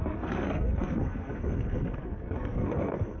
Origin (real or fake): fake